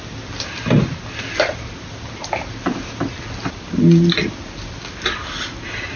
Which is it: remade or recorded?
recorded